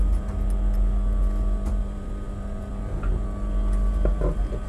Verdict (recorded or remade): recorded